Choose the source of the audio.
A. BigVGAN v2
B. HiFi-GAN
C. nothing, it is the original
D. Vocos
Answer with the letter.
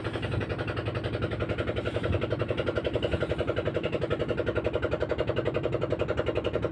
C